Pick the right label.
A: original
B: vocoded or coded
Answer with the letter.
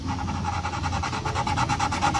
A